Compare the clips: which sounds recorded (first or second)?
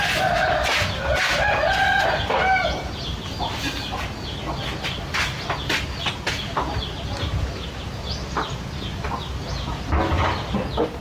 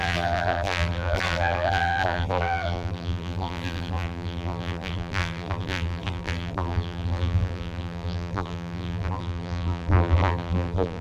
first